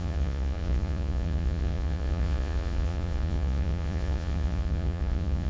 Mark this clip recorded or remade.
remade